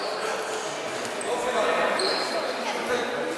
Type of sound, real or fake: fake